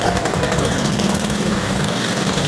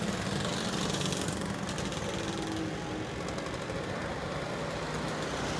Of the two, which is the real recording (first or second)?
second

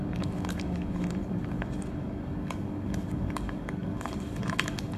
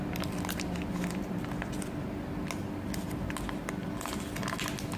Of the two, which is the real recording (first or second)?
second